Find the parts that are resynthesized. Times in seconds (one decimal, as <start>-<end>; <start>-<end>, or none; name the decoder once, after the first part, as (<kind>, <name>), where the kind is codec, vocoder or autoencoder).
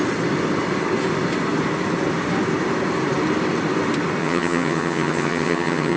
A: 4.2-6.0 (vocoder, HiFi-GAN)